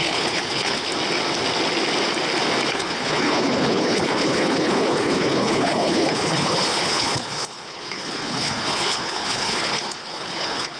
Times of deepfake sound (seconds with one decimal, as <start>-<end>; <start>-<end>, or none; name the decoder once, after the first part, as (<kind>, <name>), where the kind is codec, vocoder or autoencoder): 0.0-0.9 (codec, HILCodec); 2.7-10.8

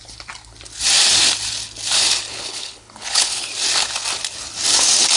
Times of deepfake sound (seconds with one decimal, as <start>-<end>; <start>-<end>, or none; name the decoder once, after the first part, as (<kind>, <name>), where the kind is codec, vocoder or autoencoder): 2.3-3.5 (codec, HILCodec)

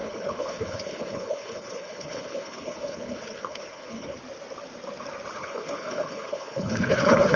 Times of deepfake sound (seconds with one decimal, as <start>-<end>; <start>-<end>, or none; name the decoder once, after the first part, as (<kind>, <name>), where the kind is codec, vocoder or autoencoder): 0.0-4.2 (codec, HILCodec); 5.4-7.4

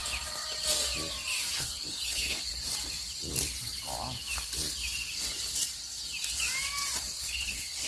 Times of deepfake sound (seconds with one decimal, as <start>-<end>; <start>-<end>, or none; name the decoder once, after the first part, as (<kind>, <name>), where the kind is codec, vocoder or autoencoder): 1.5-2.5 (codec, HILCodec); 7.0-7.9